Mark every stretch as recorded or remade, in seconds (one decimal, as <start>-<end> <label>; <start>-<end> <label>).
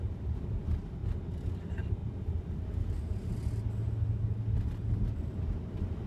0.0-1.0 remade; 1.0-1.6 recorded; 1.6-2.0 remade; 2.0-6.1 recorded